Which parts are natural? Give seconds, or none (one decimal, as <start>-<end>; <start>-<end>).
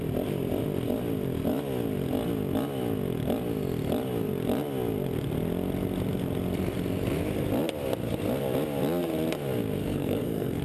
0.0-9.8